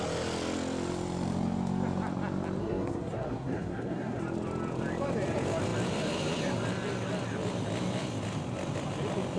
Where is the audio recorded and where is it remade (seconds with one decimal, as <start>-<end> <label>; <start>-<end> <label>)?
0.0-2.6 recorded; 2.6-4.2 remade; 4.2-9.4 recorded

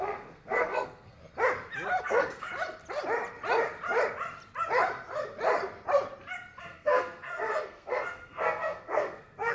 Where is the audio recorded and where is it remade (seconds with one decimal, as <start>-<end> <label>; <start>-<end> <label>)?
0.0-1.2 remade; 1.2-2.0 recorded; 2.0-2.5 remade; 2.5-6.6 recorded; 6.6-9.5 remade

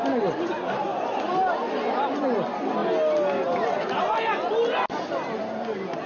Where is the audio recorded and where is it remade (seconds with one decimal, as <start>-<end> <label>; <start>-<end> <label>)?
0.0-6.1 recorded

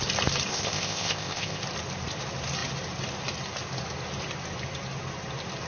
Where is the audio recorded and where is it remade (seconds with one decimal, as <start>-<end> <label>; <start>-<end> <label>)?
0.0-0.5 recorded; 0.5-1.6 remade; 1.6-5.7 recorded

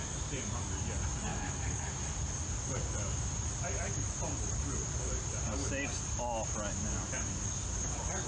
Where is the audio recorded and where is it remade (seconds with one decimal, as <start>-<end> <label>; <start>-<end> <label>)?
0.0-1.3 recorded; 1.3-1.9 remade; 1.9-8.3 recorded

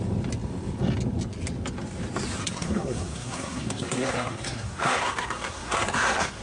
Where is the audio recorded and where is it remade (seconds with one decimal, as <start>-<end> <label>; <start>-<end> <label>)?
0.0-2.4 recorded; 2.4-6.4 remade

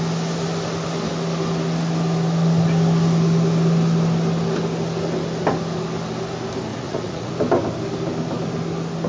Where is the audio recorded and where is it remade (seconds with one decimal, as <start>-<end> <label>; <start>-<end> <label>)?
0.0-6.7 recorded; 6.7-7.3 remade; 7.3-9.1 recorded